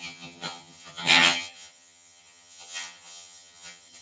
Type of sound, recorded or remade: remade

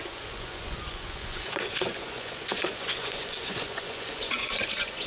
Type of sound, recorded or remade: remade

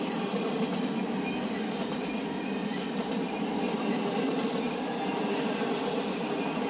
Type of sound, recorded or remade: recorded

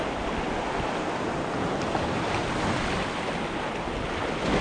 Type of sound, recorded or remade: recorded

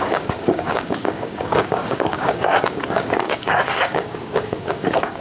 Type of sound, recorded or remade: remade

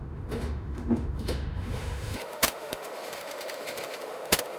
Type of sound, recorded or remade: remade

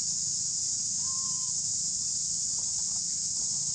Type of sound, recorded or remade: recorded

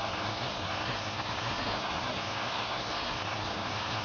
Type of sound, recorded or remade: remade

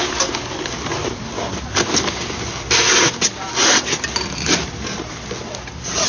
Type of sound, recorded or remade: recorded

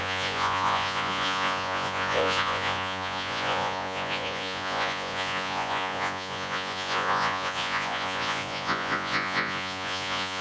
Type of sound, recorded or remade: remade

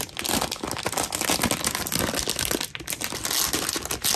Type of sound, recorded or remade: recorded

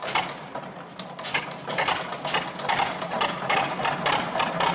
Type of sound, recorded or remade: recorded